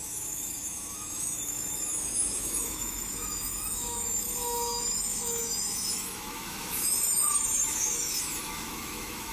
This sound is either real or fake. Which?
fake